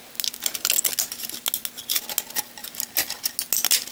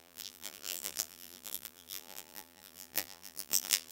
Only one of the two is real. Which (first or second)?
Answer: first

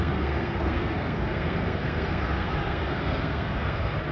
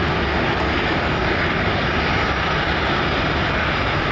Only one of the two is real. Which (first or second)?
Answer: second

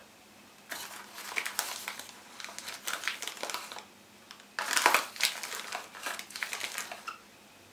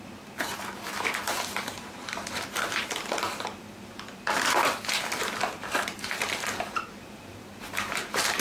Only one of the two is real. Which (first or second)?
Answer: first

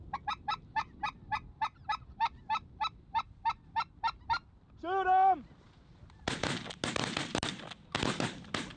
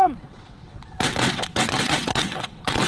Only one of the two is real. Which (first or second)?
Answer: first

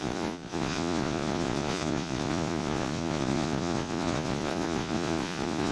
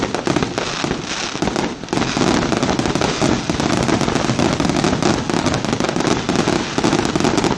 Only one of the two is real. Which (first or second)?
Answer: second